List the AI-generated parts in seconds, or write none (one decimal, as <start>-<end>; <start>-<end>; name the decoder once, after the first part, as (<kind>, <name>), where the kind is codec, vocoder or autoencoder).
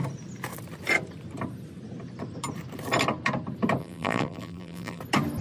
3.8-5.0 (vocoder, BigVGAN v2)